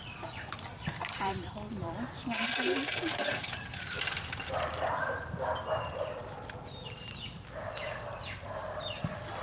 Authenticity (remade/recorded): remade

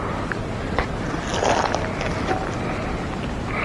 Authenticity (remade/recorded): recorded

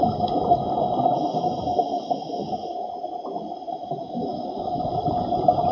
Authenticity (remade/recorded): recorded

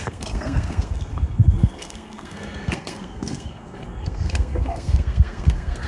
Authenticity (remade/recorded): remade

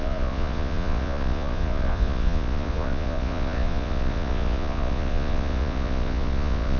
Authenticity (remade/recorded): remade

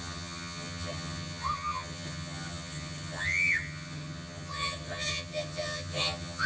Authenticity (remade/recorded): remade